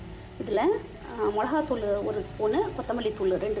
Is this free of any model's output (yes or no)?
yes